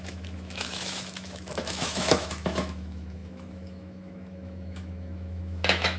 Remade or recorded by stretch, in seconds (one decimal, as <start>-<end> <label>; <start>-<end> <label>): 0.0-6.0 remade